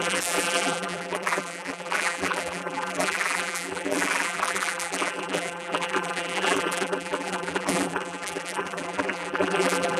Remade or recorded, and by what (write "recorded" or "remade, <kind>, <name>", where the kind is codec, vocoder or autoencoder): remade, vocoder, BigVGAN v2